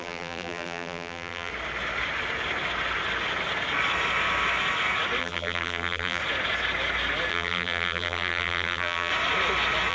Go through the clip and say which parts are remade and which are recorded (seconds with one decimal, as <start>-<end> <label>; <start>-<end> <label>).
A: 0.0-1.5 remade; 1.5-5.2 recorded; 5.2-6.2 remade; 6.2-7.3 recorded; 7.3-9.1 remade; 9.1-9.9 recorded